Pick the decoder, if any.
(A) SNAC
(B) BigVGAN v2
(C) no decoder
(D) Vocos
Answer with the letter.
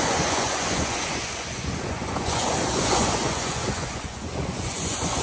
D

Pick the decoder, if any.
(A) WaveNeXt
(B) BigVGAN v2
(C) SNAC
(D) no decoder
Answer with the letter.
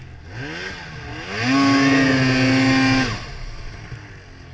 D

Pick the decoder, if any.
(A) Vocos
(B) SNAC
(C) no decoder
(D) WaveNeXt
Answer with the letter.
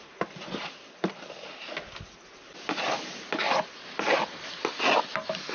C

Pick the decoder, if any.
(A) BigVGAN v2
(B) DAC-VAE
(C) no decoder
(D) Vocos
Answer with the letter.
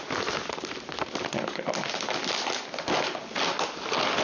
C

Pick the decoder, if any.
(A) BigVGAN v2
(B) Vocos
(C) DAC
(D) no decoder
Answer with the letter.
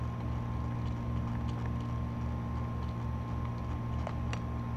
D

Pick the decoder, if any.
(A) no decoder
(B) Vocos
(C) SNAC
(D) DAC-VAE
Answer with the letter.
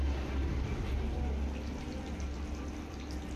A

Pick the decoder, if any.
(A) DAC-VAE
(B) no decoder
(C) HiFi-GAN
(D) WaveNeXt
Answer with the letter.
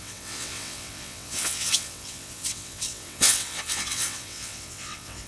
D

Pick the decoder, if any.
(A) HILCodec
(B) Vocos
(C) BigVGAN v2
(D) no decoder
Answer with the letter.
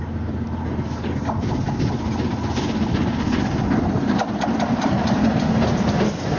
D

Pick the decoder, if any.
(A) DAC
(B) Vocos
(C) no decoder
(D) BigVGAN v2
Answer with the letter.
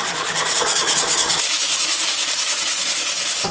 A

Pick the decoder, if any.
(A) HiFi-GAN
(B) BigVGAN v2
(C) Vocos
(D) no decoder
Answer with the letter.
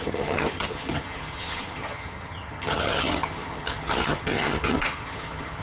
A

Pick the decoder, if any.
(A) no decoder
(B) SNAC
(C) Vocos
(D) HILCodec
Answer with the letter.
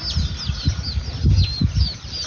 A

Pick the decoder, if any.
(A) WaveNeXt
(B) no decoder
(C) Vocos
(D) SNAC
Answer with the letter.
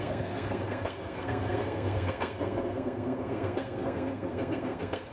D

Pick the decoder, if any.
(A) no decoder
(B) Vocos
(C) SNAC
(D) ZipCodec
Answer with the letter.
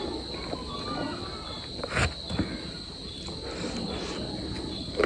A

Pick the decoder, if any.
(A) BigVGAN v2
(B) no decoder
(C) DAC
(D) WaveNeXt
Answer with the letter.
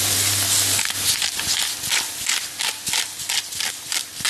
A